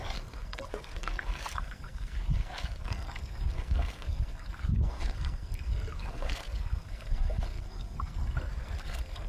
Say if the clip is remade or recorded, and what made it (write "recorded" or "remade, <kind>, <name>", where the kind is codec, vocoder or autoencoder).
remade, codec, SNAC